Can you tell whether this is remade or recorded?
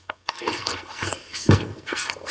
remade